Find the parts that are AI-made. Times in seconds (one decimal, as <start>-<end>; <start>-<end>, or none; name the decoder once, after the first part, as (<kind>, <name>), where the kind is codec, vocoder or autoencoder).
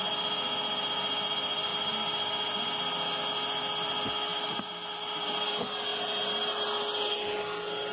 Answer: 1.7-3.3 (vocoder, BigVGAN v2); 4.3-5.5; 5.9-7.0